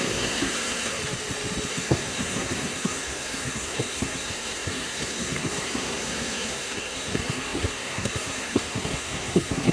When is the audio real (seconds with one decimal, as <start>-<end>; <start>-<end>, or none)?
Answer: 1.0-1.7